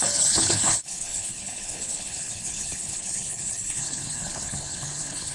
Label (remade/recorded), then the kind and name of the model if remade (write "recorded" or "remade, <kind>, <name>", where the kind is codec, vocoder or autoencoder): remade, codec, HILCodec